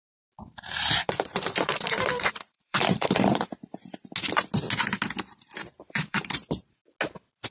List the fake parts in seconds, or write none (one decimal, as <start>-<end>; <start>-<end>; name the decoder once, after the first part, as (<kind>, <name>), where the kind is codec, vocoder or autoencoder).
0.5-3.4 (vocoder, BigVGAN v2); 5.7-6.7